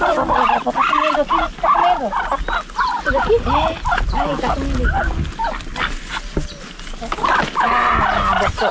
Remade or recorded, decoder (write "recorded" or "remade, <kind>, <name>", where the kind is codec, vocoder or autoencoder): recorded